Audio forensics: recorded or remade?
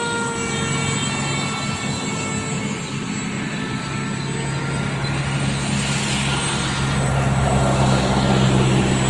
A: recorded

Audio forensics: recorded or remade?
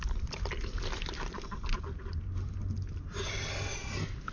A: recorded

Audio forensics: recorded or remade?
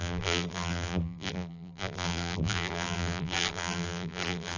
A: remade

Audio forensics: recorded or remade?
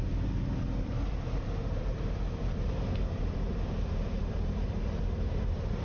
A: recorded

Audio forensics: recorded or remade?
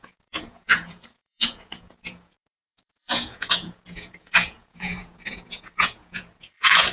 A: remade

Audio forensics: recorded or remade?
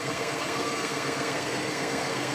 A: remade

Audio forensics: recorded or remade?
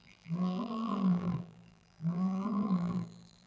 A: remade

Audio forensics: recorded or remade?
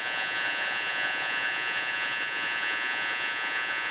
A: remade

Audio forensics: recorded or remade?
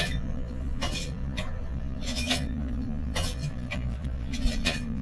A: remade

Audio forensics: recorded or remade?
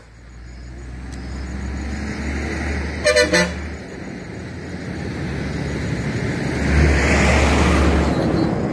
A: recorded